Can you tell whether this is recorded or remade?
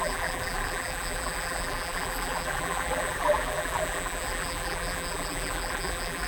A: remade